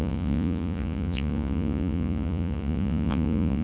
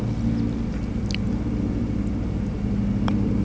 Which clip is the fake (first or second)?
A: first